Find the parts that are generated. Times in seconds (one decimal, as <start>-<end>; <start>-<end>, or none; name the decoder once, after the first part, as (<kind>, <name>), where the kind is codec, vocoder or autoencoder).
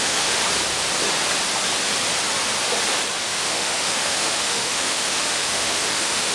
0.0-0.4 (autoencoder, DAC-VAE); 3.2-6.3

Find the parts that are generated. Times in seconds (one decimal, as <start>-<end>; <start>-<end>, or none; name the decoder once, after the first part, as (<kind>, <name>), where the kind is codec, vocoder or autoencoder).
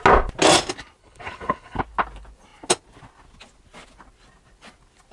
1.0-1.8 (codec, HILCodec)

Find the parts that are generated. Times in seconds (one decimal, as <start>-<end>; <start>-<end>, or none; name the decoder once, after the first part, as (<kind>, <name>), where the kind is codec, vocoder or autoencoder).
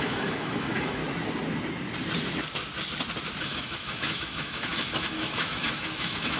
0.0-1.0 (autoencoder, DAC-VAE); 3.4-6.4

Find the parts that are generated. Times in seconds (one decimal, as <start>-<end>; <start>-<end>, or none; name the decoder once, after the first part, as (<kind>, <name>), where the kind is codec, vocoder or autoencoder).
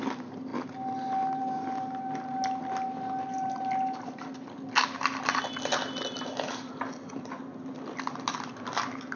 none